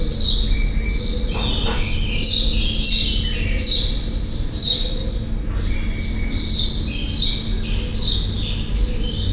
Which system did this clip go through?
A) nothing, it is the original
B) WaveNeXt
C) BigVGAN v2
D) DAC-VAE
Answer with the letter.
A